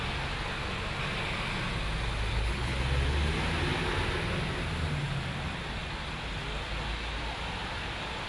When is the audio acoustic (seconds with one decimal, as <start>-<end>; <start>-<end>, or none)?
0.0-2.3; 2.8-8.3